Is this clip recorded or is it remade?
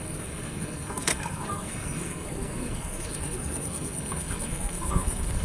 remade